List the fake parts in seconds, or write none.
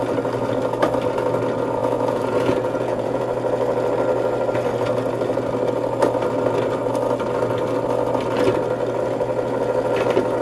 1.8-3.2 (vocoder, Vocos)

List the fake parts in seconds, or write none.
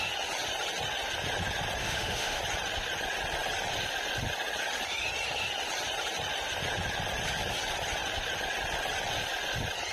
1.8-2.4 (autoencoder, DAC-VAE)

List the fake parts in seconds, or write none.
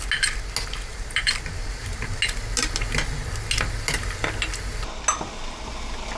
0.9-2.2 (vocoder, BigVGAN v2)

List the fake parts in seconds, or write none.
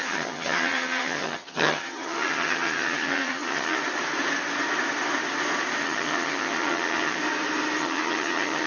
0.0-3.8 (vocoder, HiFi-GAN); 5.8-7.2; 7.8-8.7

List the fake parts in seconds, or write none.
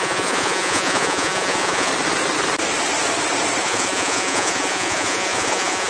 0.0-1.9 (vocoder, Vocos); 3.6-5.9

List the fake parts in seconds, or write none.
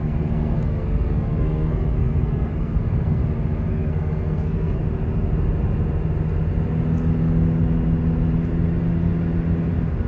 0.0-3.2 (codec, SNAC); 3.7-4.8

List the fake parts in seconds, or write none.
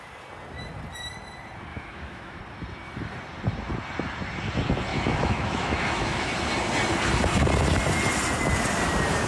1.7-2.4 (autoencoder, DAC-VAE); 4.9-6.3